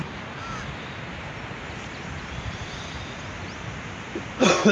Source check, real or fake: real